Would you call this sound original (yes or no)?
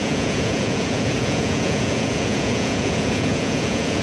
no